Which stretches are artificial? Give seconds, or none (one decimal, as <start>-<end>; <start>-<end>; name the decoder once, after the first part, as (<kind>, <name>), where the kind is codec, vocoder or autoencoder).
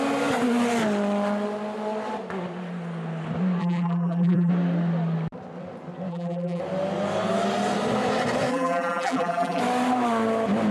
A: 3.6-4.5 (vocoder, BigVGAN v2); 6.1-6.6; 8.5-9.6